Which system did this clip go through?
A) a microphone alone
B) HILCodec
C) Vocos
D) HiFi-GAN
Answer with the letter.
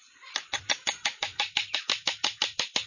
A